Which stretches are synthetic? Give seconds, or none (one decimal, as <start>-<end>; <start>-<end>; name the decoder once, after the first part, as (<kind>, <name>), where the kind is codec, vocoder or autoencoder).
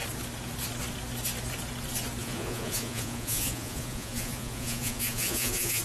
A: 2.2-5.8 (vocoder, Vocos)